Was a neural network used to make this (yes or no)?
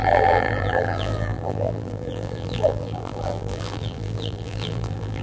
yes